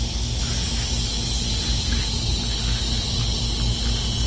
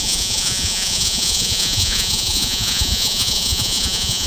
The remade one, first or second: second